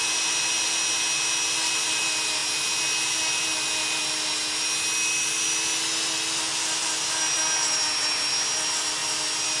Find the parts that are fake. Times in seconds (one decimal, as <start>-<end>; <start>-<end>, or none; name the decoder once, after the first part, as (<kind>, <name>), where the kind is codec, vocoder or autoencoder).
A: none